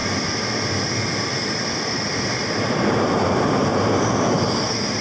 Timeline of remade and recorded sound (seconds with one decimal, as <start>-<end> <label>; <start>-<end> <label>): 0.0-3.0 recorded; 3.0-3.7 remade; 3.7-5.0 recorded